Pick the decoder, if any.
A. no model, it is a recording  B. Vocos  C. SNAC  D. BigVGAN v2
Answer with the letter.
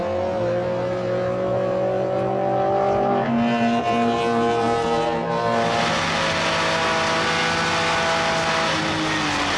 A